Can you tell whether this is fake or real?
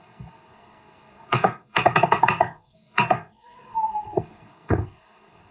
fake